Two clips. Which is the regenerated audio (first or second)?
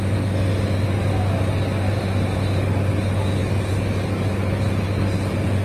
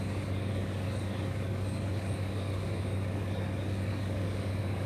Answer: second